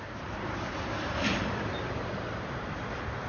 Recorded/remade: remade